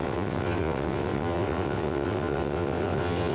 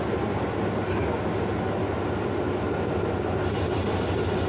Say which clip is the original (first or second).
second